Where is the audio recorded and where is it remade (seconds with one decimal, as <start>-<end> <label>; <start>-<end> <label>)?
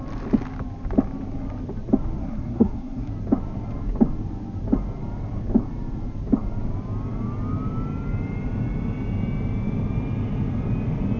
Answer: 0.0-2.2 recorded; 2.2-3.1 remade; 3.1-11.2 recorded